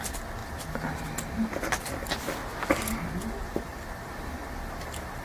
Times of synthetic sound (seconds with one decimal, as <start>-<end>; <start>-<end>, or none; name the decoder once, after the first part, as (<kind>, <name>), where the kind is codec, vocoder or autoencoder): none